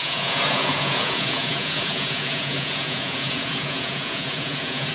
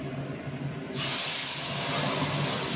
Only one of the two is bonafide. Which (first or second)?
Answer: second